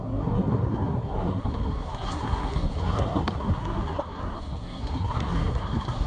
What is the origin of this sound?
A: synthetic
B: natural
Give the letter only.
A